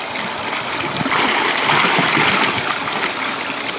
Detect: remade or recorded recorded